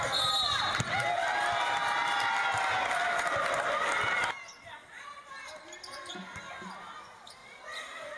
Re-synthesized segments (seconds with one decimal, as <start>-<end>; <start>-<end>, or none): 4.7-5.3; 7.4-8.2